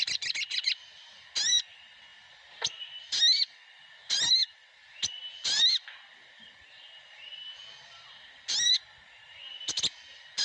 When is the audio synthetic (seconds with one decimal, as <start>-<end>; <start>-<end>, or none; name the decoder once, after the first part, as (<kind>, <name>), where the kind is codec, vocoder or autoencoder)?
none